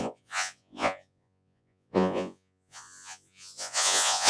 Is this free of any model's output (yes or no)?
no